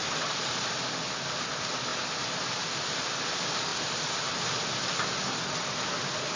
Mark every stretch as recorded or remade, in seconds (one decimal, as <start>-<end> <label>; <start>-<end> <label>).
0.0-6.4 recorded